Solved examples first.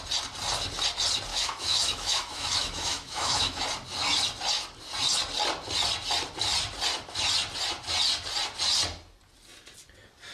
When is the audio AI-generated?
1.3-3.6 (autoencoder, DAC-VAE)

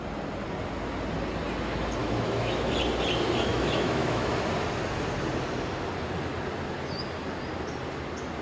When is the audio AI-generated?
2.0-2.7 (autoencoder, DAC-VAE); 3.5-4.3

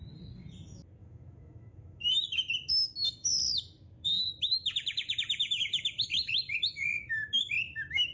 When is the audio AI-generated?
1.0-2.1 (autoencoder, DAC-VAE); 4.2-8.1

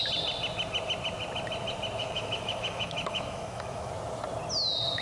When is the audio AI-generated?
2.0-3.9 (autoencoder, DAC-VAE)

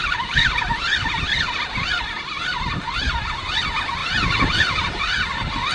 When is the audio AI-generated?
none

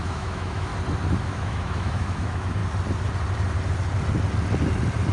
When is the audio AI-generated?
0.0-0.7 (autoencoder, DAC-VAE); 1.2-2.6

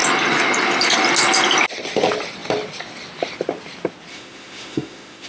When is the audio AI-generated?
4.1-5.3 (autoencoder, DAC-VAE)